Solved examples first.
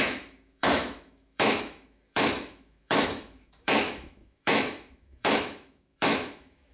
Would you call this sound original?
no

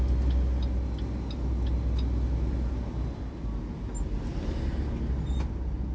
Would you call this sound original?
yes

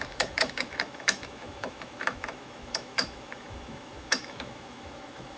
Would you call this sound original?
no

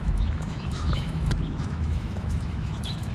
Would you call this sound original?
no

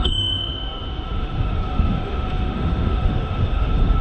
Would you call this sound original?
no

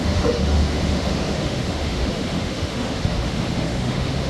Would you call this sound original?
no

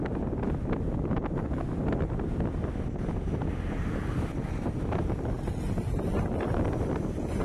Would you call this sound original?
yes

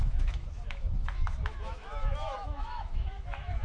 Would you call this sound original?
no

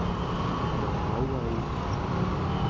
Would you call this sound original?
yes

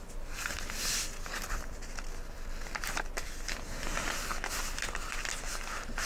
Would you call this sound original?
yes